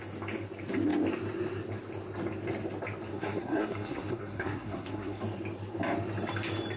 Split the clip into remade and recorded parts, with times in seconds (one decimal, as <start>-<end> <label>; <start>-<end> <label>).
0.0-3.1 recorded; 3.1-5.2 remade; 5.2-6.8 recorded